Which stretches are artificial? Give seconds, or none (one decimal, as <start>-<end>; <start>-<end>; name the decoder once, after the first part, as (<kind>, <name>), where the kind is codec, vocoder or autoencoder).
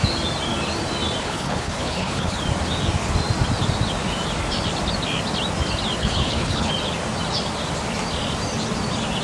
1.2-2.4 (codec, HILCodec); 6.0-6.7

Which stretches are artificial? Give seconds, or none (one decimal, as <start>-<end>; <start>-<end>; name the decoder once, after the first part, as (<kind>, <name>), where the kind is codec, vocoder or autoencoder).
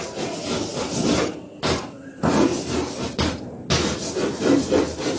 0.0-2.5 (vocoder, BigVGAN v2); 4.4-5.2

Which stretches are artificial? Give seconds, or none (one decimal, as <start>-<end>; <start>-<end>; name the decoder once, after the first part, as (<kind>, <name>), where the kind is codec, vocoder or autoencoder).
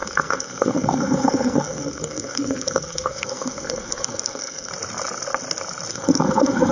0.0-4.7 (codec, SNAC); 5.9-6.7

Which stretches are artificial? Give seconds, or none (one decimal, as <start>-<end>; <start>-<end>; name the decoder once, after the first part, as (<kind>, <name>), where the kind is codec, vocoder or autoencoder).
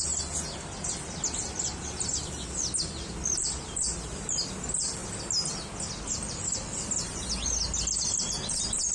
none